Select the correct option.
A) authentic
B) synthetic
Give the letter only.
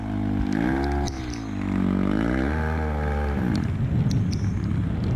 A